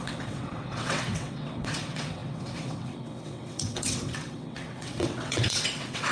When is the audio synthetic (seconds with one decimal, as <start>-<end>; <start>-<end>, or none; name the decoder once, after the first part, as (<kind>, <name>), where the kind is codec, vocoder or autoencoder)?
0.0-6.1 (vocoder, WaveNeXt)